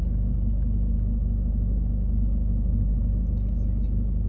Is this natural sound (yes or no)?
yes